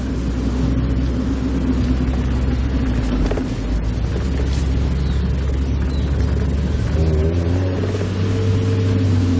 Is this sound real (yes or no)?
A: yes